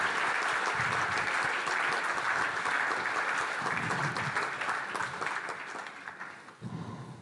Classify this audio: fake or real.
real